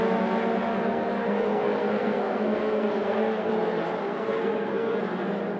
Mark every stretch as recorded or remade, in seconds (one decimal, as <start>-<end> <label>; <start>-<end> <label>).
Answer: 0.0-0.7 recorded; 0.7-3.5 remade; 3.5-4.0 recorded; 4.0-5.0 remade; 5.0-5.6 recorded